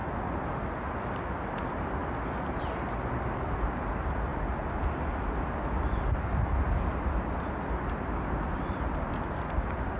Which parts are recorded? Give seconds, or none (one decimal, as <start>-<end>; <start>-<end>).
0.0-10.0